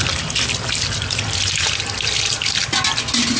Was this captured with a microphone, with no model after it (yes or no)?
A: yes